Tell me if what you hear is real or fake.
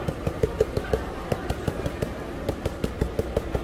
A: real